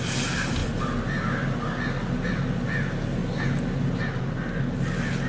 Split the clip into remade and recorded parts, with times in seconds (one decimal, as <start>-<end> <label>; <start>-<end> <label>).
0.0-5.3 recorded